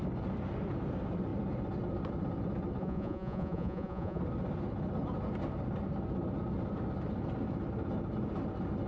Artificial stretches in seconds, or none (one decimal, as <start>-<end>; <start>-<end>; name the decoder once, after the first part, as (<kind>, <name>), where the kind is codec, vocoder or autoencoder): 2.8-4.2 (vocoder, Vocos)

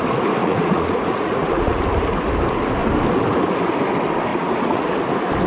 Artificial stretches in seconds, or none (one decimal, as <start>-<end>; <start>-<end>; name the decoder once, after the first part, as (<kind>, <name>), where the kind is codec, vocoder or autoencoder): 0.4-1.8 (vocoder, Vocos); 4.3-5.0

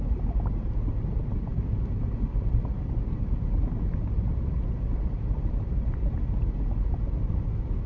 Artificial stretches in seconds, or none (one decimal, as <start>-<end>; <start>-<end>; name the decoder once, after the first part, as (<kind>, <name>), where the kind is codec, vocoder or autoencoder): none

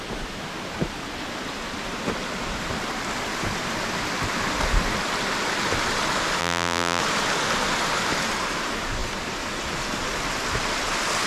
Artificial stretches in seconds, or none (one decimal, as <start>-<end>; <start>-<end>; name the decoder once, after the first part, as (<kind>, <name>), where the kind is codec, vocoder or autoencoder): 6.4-7.0 (vocoder, BigVGAN v2)

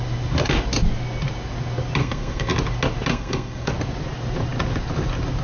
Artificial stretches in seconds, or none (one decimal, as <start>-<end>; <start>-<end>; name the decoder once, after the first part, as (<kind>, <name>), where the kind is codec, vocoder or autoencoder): 2.0-2.5 (codec, SNAC); 3.1-3.7

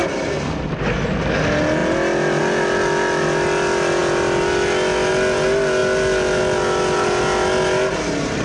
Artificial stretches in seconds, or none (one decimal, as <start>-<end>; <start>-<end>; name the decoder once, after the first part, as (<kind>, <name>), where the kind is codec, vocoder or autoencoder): none